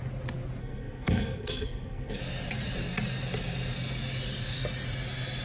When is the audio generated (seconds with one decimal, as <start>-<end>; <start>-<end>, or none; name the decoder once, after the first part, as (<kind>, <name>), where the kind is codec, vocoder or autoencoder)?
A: 0.6-2.2 (codec, SNAC)